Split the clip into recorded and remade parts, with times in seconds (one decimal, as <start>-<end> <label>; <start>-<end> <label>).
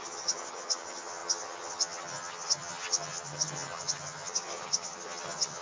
0.0-5.6 remade